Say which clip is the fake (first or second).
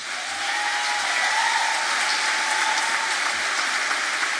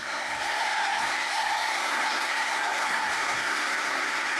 second